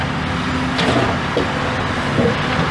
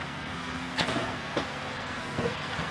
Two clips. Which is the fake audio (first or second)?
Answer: second